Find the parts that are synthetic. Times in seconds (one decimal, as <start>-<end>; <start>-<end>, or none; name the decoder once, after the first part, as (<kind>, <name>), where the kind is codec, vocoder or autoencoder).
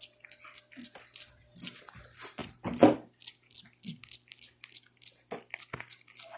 none